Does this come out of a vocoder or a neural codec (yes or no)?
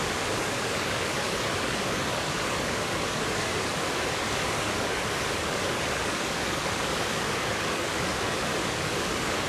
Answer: yes